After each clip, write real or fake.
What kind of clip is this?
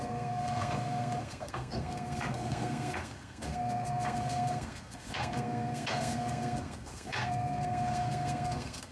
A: fake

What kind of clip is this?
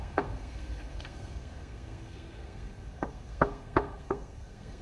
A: fake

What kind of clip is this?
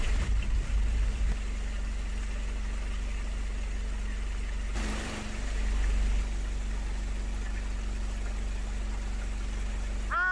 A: real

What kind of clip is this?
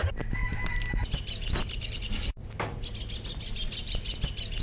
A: real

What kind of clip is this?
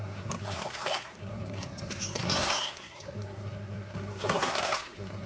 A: fake